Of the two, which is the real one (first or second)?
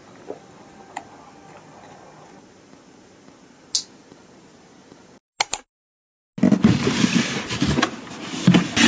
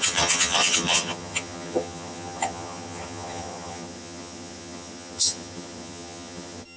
first